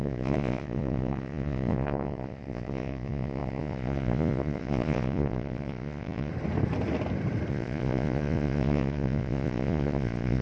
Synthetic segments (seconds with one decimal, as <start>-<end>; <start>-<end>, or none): 0.0-6.3; 7.5-10.4